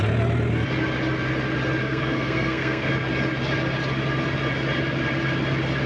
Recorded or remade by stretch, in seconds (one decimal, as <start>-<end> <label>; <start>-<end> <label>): 0.0-1.8 recorded; 1.8-2.9 remade; 2.9-5.9 recorded